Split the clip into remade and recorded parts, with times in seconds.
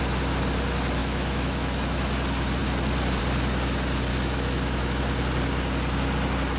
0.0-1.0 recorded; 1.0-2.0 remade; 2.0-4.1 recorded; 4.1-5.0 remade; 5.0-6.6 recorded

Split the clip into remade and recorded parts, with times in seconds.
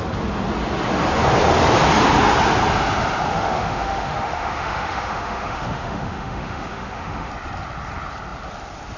0.0-3.3 recorded; 3.3-7.3 remade; 7.3-9.0 recorded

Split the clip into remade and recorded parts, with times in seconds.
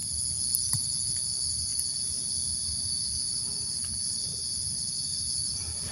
0.0-5.9 recorded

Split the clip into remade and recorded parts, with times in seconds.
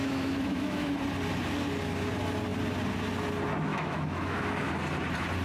0.0-0.9 remade; 0.9-3.7 recorded; 3.7-4.7 remade; 4.7-5.4 recorded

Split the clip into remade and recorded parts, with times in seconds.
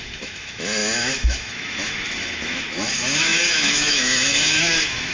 0.0-5.1 remade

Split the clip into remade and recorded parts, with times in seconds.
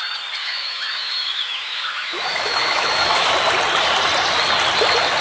0.0-0.4 recorded; 0.4-3.3 remade; 3.3-5.2 recorded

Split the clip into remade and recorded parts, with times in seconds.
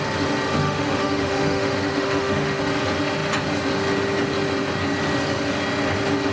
0.0-0.6 recorded; 0.6-2.6 remade; 2.6-6.3 recorded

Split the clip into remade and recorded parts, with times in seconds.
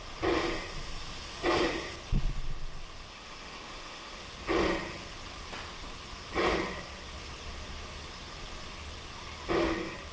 0.0-3.1 recorded; 3.1-4.2 remade; 4.2-10.1 recorded